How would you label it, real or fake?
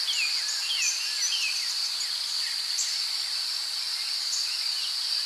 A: fake